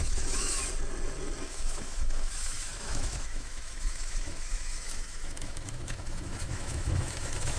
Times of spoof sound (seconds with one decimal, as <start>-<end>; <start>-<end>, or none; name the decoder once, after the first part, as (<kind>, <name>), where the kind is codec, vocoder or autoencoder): 0.0-0.6 (autoencoder, DAC-VAE); 1.5-7.6